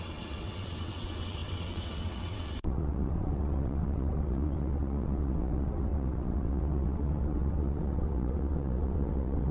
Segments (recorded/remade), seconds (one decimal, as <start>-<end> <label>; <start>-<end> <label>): 0.0-9.5 remade